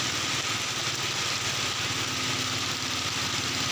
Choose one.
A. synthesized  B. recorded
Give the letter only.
B